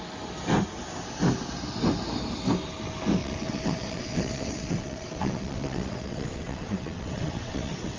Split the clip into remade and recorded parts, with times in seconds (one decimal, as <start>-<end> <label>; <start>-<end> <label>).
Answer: 0.0-3.2 recorded; 3.2-8.0 remade